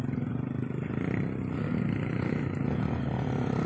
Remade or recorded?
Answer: recorded